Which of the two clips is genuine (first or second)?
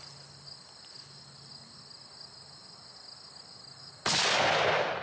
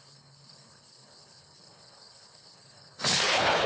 first